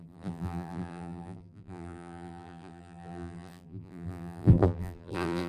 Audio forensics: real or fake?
fake